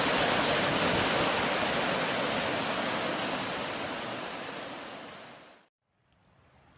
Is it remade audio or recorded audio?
recorded